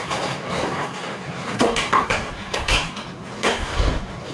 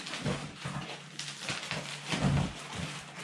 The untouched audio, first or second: second